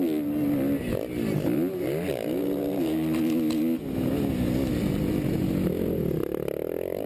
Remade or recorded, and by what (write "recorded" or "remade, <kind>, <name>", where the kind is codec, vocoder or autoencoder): recorded